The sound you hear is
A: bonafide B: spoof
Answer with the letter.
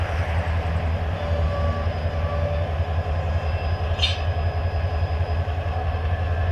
A